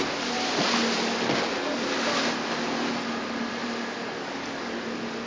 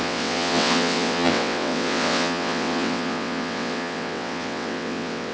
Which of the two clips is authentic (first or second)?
first